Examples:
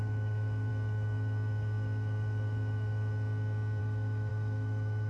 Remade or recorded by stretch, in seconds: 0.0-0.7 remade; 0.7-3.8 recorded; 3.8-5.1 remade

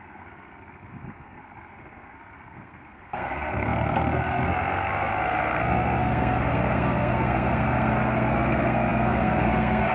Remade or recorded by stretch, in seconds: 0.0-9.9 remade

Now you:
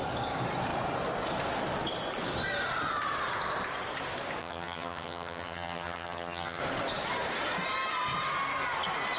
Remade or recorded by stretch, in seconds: 0.0-4.4 recorded; 4.4-6.6 remade; 6.6-9.2 recorded

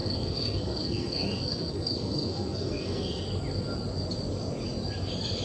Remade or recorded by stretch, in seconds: 0.0-3.2 remade; 3.2-5.4 recorded

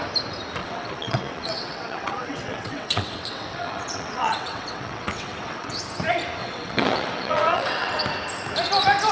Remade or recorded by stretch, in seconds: 0.0-0.6 recorded; 0.6-5.8 remade; 5.8-6.4 recorded; 6.4-8.0 remade; 8.0-9.1 recorded

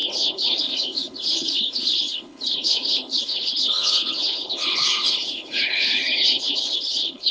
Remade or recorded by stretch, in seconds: 0.0-7.3 remade